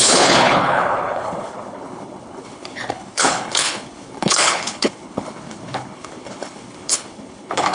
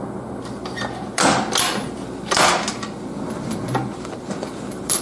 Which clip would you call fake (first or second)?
first